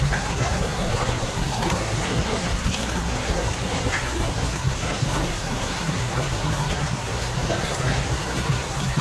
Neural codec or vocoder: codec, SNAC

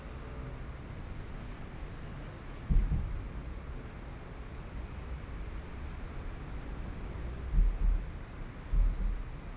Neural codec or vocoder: none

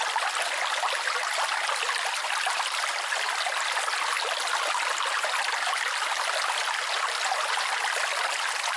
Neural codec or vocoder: none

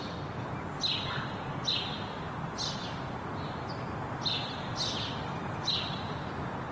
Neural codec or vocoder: none